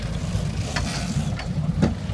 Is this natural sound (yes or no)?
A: yes